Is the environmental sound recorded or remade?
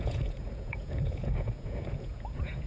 remade